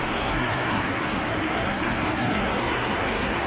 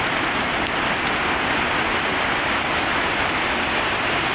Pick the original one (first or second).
second